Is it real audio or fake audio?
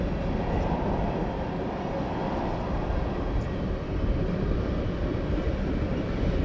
real